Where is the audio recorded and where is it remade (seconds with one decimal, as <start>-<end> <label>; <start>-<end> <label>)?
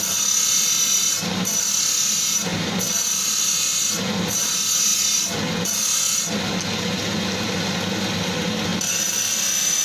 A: 0.0-9.8 recorded